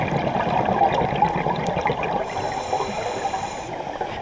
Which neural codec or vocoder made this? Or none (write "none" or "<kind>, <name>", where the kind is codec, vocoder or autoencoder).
none